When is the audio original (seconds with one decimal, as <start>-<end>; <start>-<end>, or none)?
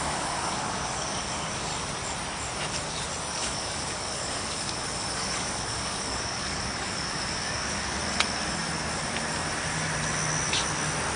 1.7-3.3; 8.0-11.2